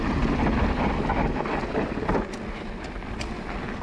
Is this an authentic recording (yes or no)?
yes